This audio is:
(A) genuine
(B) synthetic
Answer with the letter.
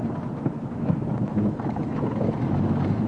B